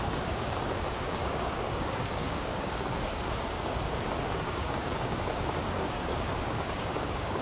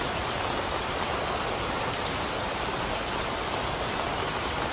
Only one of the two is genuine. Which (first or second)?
second